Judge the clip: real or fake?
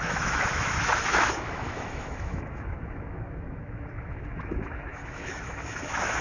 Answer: fake